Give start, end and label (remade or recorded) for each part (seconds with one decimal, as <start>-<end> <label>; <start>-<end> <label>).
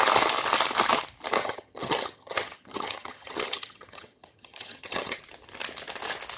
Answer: 0.0-1.4 recorded; 1.4-5.2 remade; 5.2-6.4 recorded